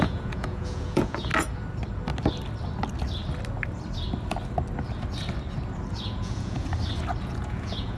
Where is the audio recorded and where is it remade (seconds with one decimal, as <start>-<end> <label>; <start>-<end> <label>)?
0.0-1.3 remade; 1.3-5.9 recorded; 5.9-6.7 remade; 6.7-7.2 recorded; 7.2-8.0 remade